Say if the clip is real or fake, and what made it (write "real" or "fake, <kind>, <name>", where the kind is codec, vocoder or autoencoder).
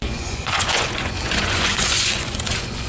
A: fake, vocoder, Vocos